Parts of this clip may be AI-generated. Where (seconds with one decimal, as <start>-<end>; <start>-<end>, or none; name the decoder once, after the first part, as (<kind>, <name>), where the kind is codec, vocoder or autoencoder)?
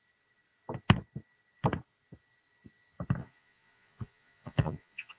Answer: 3.2-5.2 (vocoder, Vocos)